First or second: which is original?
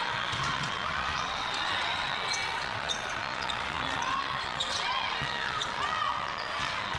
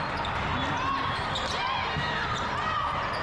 second